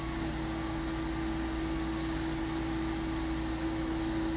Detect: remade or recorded recorded